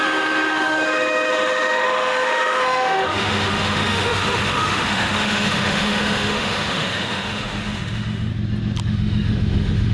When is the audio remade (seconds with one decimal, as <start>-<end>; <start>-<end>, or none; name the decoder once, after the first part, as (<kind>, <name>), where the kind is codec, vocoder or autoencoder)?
0.0-8.3 (autoencoder, DAC-VAE); 8.8-9.9